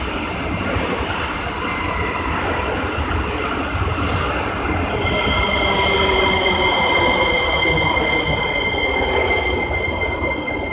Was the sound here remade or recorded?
recorded